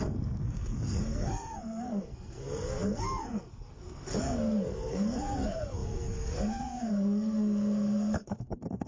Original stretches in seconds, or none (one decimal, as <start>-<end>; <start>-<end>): none